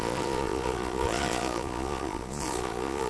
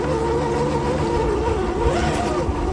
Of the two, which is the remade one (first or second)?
first